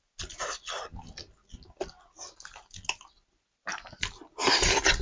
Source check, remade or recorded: recorded